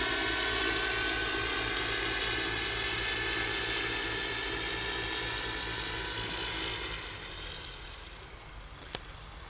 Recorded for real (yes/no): yes